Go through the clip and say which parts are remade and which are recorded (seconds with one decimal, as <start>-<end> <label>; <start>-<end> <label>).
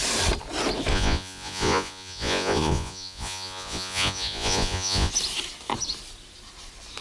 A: 0.0-0.9 recorded; 0.9-5.1 remade; 5.1-7.0 recorded